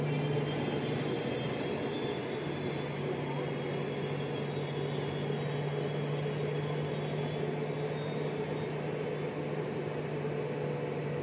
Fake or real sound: real